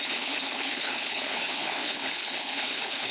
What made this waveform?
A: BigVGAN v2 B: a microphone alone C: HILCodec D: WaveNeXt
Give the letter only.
C